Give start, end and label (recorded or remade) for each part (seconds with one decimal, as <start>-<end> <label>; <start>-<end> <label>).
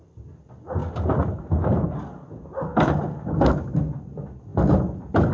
0.0-4.5 recorded; 4.5-5.3 remade